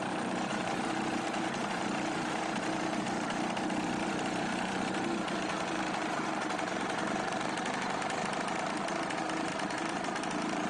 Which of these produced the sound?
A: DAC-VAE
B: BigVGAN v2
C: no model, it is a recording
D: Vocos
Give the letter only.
B